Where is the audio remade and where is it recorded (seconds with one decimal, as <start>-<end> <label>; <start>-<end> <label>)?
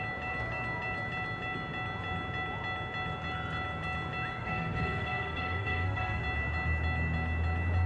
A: 0.0-4.4 recorded; 4.4-6.2 remade; 6.2-7.9 recorded